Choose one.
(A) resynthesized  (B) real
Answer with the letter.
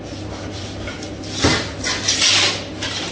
B